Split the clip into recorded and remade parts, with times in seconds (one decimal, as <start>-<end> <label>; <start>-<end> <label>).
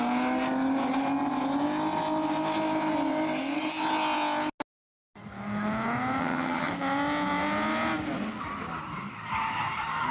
0.0-6.2 recorded; 6.2-6.7 remade; 6.7-10.1 recorded